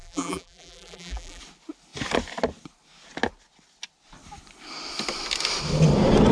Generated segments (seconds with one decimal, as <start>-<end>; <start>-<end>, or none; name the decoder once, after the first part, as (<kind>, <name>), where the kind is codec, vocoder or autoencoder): 0.0-1.4 (vocoder, BigVGAN v2)